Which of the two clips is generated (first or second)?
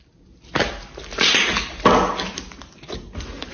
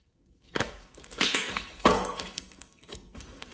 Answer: second